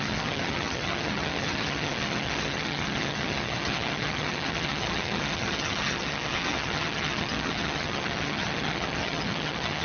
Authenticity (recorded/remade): remade